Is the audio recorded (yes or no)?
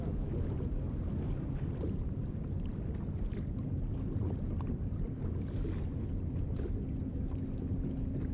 yes